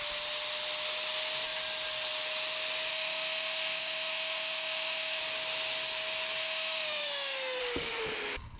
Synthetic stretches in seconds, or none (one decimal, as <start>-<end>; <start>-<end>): 2.9-5.2; 6.4-7.6